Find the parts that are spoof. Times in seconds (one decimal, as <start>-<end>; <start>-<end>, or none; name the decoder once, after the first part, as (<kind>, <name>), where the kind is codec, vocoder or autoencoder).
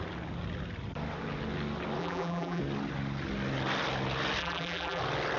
2.0-2.6 (vocoder, BigVGAN v2); 4.4-5.0